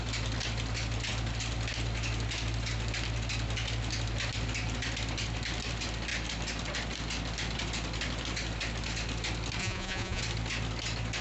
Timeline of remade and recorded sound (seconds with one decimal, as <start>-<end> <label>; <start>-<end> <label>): 0.0-9.6 recorded; 9.6-10.2 remade; 10.2-11.2 recorded